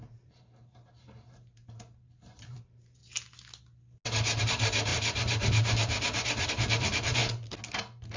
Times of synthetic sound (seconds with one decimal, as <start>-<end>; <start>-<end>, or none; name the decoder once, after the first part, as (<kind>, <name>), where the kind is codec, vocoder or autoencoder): 0.0-3.0 (vocoder, BigVGAN v2); 4.4-7.2